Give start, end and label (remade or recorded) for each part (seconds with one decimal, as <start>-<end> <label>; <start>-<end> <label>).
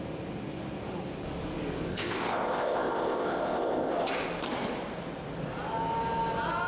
0.0-1.9 recorded; 1.9-3.9 remade; 3.9-6.7 recorded